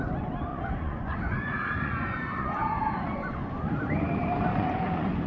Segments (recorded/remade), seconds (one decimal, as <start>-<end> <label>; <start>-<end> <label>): 0.0-0.5 recorded; 0.5-3.7 remade; 3.7-4.5 recorded; 4.5-5.3 remade